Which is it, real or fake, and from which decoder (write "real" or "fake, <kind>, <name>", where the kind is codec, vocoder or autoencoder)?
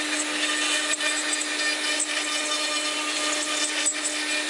real